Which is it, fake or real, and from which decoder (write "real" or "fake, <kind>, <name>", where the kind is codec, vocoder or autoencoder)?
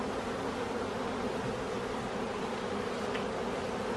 real